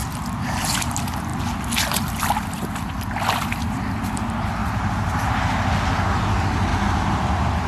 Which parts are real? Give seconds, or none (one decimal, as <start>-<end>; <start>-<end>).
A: 0.0-4.6; 5.4-7.7